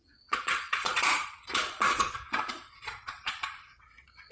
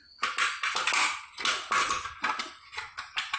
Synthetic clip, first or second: first